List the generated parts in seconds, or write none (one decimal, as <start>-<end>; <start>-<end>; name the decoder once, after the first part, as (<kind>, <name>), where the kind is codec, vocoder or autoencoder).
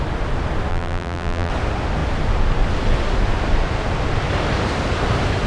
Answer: 0.7-1.5 (vocoder, BigVGAN v2)